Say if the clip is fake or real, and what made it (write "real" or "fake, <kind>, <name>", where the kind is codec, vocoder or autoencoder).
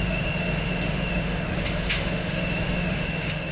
fake, autoencoder, DAC-VAE